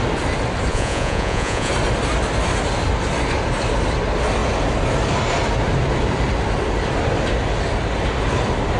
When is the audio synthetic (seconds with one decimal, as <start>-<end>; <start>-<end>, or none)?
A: 0.7-1.7